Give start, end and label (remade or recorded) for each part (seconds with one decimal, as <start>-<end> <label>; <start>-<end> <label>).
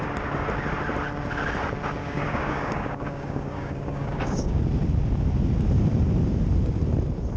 0.0-2.0 recorded; 2.0-4.6 remade; 4.6-7.4 recorded